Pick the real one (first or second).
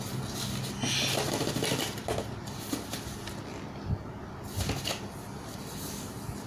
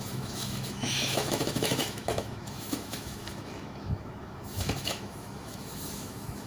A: first